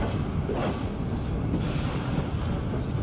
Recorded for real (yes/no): yes